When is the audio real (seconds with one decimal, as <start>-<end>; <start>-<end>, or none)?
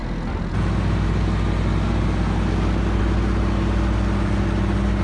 0.0-5.0